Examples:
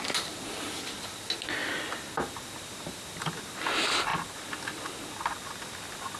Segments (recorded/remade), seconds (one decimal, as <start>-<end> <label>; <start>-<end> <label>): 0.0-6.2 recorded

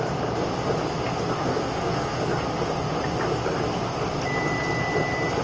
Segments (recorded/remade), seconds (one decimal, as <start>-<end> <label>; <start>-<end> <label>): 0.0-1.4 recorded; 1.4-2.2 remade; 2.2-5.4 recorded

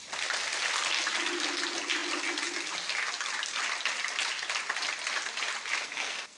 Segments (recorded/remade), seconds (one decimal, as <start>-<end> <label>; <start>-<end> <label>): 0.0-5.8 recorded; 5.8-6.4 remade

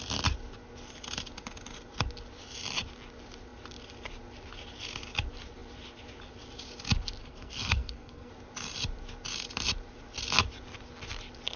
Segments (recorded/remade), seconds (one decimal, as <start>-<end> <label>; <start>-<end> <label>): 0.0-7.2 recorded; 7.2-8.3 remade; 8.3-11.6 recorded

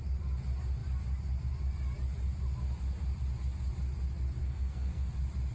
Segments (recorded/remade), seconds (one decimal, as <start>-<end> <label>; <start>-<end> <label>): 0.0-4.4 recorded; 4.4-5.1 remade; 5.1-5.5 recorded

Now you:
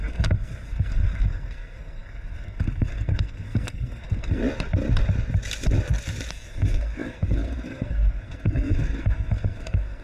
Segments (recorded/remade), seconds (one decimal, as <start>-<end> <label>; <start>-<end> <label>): 0.0-4.4 remade; 4.4-6.3 recorded; 6.3-10.0 remade

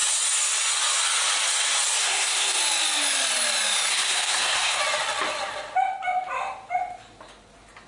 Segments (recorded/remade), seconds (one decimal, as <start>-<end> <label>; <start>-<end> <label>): 0.0-2.0 recorded; 2.0-2.6 remade; 2.6-3.9 recorded; 3.9-4.8 remade; 4.8-7.9 recorded